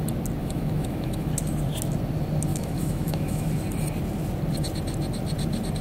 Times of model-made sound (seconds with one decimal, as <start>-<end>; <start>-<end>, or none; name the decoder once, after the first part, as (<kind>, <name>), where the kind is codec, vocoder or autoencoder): 0.4-1.3 (autoencoder, DAC-VAE); 2.5-3.5